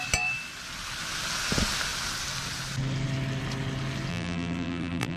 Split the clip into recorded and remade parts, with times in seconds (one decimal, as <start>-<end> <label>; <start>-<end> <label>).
0.0-4.1 recorded; 4.1-5.2 remade